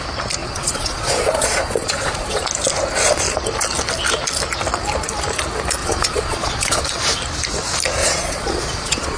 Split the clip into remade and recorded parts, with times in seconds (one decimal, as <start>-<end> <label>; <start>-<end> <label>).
0.0-0.4 recorded; 0.4-2.4 remade; 2.4-5.8 recorded; 5.8-6.8 remade; 6.8-8.0 recorded; 8.0-9.2 remade